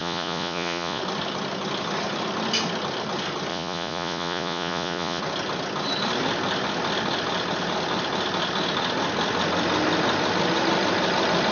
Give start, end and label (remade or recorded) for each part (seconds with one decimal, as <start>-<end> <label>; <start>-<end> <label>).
0.0-1.0 remade; 1.0-3.5 recorded; 3.5-5.2 remade; 5.2-11.5 recorded